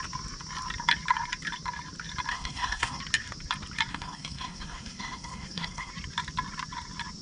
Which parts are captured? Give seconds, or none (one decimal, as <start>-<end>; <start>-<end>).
0.0-2.3; 3.0-3.9; 5.9-7.2

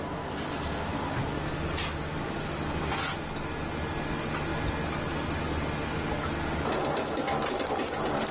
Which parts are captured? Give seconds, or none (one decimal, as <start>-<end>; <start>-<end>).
0.0-8.3

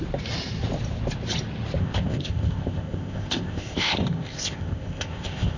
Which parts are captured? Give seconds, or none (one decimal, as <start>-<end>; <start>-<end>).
0.0-1.8

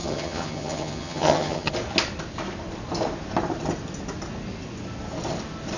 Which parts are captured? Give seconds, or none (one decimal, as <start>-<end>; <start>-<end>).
1.7-5.8

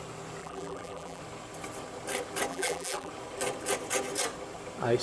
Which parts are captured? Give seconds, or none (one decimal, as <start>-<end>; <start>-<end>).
0.0-0.4; 1.2-2.5; 3.1-5.0

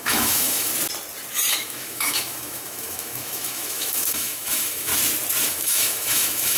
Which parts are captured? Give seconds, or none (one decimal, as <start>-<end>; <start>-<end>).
0.7-1.5; 4.9-5.5